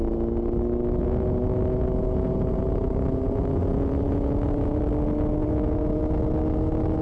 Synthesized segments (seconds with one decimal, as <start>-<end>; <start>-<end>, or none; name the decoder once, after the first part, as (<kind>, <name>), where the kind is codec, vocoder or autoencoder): 1.0-4.8 (vocoder, Vocos); 5.4-6.0